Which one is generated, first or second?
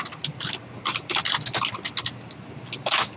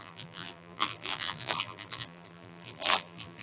second